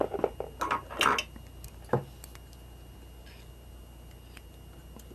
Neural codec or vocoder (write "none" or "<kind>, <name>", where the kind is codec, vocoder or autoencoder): none